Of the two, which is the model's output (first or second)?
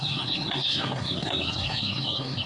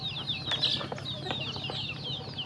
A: first